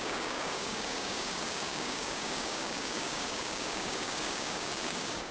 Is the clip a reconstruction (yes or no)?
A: yes